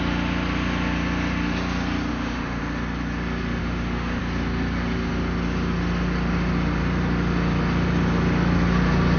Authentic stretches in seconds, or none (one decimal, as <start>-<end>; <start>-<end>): 0.0-2.1; 2.6-3.6; 4.2-9.2